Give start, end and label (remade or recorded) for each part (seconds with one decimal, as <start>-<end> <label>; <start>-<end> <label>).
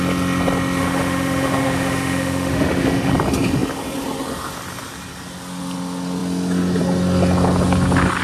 0.0-0.8 recorded; 0.8-3.1 remade; 3.1-8.2 recorded